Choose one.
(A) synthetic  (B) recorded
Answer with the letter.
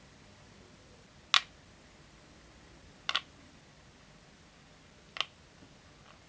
B